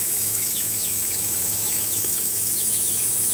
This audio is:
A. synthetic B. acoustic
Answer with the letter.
A